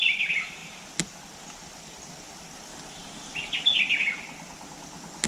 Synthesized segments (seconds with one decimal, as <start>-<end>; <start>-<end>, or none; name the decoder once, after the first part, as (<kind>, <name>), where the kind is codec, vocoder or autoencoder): none